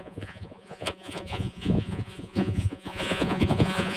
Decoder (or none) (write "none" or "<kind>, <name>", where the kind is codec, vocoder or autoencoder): vocoder, Vocos